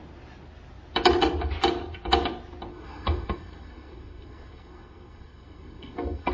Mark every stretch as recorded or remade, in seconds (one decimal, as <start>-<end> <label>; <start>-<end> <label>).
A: 0.0-2.7 recorded; 2.7-6.3 remade